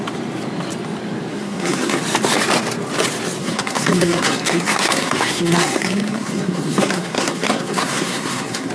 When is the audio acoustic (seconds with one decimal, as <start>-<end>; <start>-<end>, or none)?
0.0-1.3; 2.0-3.4